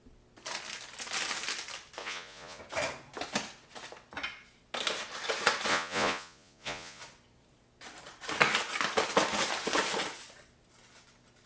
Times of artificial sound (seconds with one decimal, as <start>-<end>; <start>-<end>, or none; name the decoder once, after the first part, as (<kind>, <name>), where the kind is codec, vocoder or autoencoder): 2.0-2.6 (vocoder, Vocos); 5.7-7.0